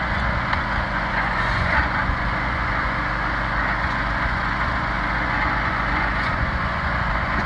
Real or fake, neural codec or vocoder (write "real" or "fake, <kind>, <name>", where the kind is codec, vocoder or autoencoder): fake, vocoder, Vocos